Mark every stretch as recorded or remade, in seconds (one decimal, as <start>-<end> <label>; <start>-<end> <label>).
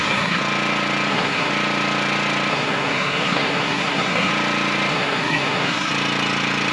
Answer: 0.0-0.4 remade; 0.4-1.1 recorded; 1.1-1.5 remade; 1.5-2.5 recorded; 2.5-4.3 remade; 4.3-4.9 recorded; 4.9-5.9 remade; 5.9-6.7 recorded